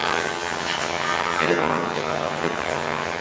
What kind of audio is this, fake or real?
fake